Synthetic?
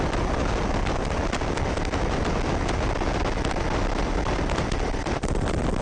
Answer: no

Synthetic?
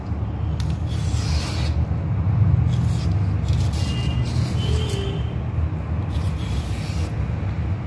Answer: no